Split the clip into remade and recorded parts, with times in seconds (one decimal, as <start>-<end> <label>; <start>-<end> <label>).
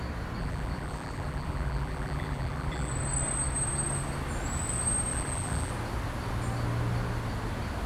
0.0-0.4 recorded; 0.4-2.9 remade; 2.9-5.1 recorded; 5.1-5.7 remade; 5.7-7.9 recorded